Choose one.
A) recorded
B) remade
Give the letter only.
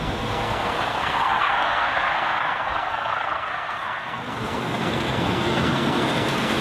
B